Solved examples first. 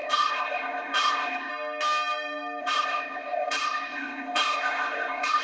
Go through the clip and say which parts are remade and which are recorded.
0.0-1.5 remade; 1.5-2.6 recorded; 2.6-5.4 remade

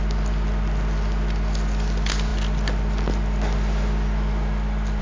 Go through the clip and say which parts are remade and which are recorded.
0.0-5.0 recorded